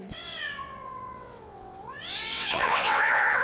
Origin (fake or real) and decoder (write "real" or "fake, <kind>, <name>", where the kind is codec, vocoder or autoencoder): fake, vocoder, WaveNeXt